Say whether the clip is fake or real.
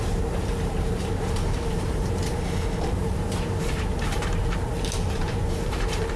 fake